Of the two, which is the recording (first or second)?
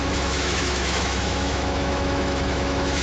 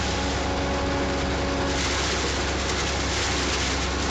second